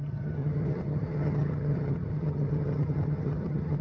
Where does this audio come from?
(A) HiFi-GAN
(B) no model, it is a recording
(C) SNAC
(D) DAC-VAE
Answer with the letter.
A